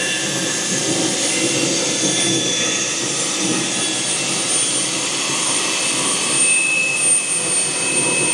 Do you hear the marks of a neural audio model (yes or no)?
no